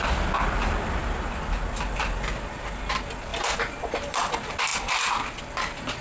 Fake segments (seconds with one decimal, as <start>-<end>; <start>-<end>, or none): none